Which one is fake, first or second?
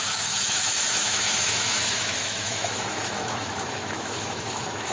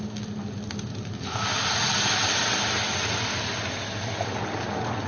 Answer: first